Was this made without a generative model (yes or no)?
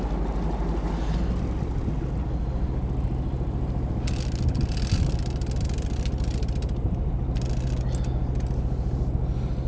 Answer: yes